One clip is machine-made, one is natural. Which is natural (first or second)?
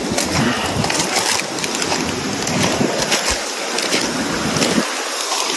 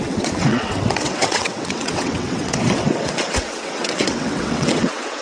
first